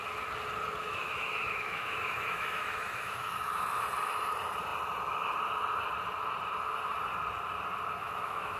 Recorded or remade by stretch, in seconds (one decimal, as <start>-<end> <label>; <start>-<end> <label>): 0.0-0.8 recorded; 0.8-3.3 remade; 3.3-8.0 recorded; 8.0-8.6 remade